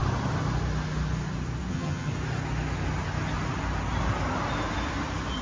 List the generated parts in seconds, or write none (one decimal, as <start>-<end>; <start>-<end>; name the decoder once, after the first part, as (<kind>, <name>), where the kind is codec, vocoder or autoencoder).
1.7-2.1 (vocoder, HiFi-GAN)